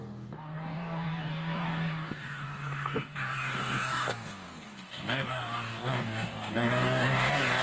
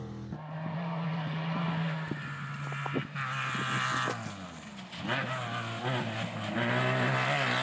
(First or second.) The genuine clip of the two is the second